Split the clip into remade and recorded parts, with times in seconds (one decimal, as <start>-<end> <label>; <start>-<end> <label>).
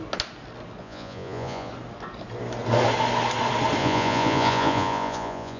0.0-0.8 recorded; 0.8-1.7 remade; 1.7-3.8 recorded; 3.8-5.6 remade